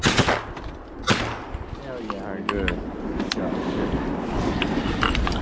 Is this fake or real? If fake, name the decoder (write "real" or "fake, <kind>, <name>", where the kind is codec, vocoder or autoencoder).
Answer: real